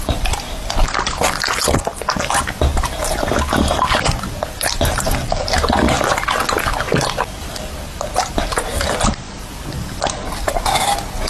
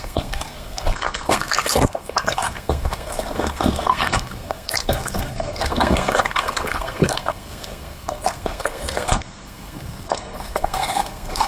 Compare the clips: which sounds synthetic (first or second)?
second